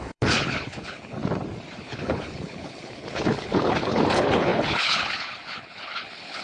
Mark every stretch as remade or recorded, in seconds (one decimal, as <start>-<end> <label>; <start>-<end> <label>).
0.0-1.2 remade; 1.2-1.8 recorded; 1.8-6.4 remade